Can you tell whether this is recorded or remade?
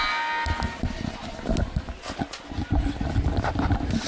recorded